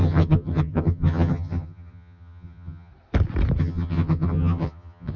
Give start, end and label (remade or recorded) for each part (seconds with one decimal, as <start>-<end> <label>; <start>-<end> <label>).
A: 0.0-2.9 remade; 2.9-3.6 recorded; 3.6-5.2 remade